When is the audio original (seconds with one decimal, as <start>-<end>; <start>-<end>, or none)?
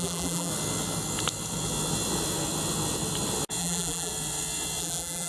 0.5-3.6; 4.1-4.8